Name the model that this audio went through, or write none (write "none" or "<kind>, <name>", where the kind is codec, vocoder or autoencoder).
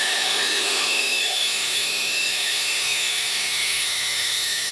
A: autoencoder, DAC-VAE